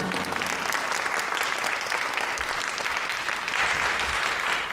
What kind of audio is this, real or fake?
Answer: real